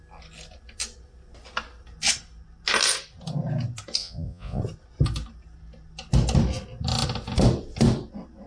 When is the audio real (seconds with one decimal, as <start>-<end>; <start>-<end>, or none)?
0.0-4.0; 4.6-8.5